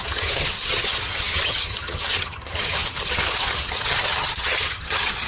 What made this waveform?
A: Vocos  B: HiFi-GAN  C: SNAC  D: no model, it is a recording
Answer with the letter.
B